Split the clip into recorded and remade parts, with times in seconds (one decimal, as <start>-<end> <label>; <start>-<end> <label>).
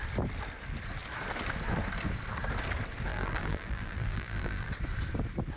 0.0-3.1 recorded; 3.1-4.7 remade; 4.7-5.6 recorded